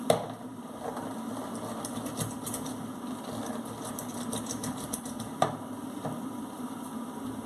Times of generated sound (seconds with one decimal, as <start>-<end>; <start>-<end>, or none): 0.0-0.5; 5.0-7.5